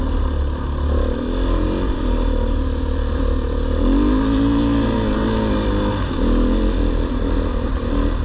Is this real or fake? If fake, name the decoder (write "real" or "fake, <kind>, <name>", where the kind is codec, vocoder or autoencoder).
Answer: real